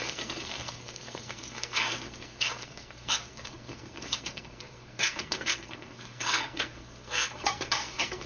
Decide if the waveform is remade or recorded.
remade